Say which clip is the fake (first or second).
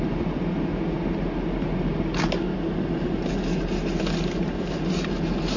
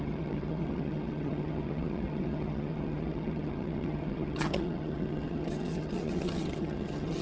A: second